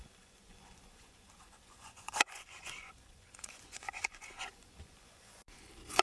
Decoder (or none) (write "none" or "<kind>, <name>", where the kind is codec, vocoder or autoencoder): vocoder, Vocos